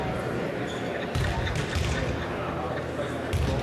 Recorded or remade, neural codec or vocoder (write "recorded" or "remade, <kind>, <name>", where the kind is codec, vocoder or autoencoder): recorded